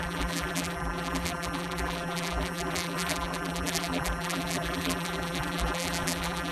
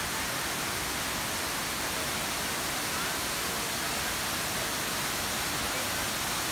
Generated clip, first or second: first